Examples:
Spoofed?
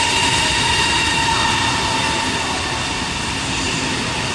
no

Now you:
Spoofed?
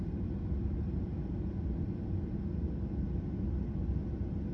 no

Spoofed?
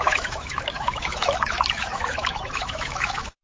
yes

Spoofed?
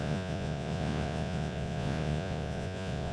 yes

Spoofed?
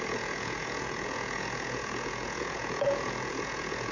yes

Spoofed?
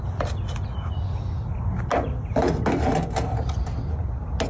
no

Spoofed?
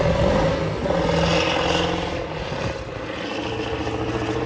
no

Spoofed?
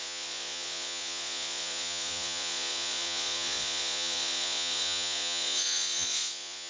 yes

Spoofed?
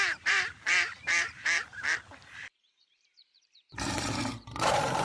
yes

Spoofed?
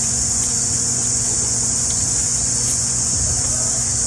yes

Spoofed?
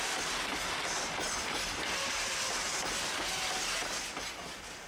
no